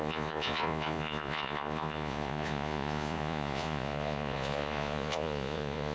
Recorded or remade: remade